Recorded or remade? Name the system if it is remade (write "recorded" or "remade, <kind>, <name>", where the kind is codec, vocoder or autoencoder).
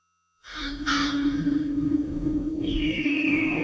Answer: remade, codec, DAC